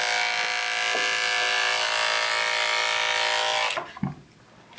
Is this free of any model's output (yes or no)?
yes